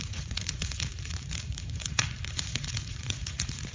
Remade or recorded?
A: remade